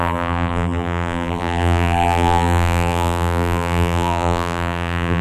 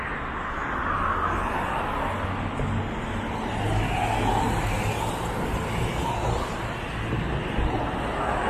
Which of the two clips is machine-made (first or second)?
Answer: first